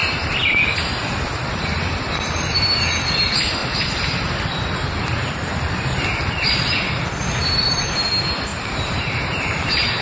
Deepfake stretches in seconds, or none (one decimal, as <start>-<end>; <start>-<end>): 3.6-4.3; 8.5-10.0